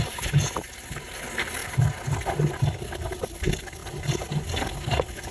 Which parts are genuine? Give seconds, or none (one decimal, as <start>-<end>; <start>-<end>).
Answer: 0.0-5.3

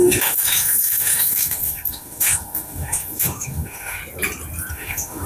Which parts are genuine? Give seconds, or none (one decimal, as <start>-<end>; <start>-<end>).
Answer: 4.0-4.7

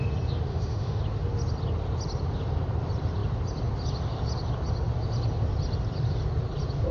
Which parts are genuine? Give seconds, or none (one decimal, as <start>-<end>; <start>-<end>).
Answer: 0.0-0.5; 1.0-6.9

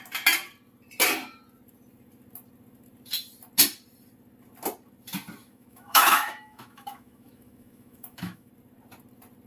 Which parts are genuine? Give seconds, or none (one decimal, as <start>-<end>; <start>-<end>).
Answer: 0.0-5.4; 8.5-9.5

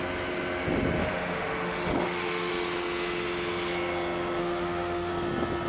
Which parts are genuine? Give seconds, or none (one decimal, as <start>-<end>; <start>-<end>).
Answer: 0.0-1.0; 2.5-4.4; 5.1-5.7

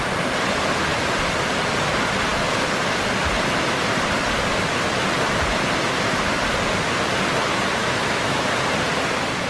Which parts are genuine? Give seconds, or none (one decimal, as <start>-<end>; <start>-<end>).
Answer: 0.0-7.8; 8.4-9.5

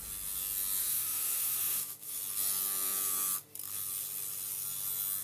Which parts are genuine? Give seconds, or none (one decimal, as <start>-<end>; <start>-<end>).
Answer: 0.0-0.8; 2.2-5.2

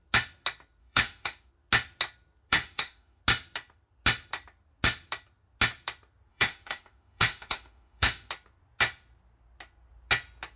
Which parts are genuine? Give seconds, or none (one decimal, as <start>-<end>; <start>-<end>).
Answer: 0.0-0.8; 1.5-2.5; 3.2-6.3; 8.3-10.6